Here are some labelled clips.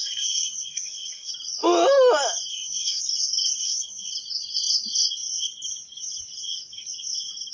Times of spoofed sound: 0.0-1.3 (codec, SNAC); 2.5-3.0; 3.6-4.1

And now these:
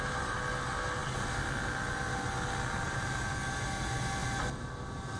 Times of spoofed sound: none

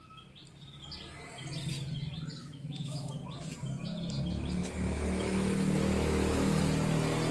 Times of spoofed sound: 2.4-3.1 (autoencoder, DAC-VAE); 4.6-6.6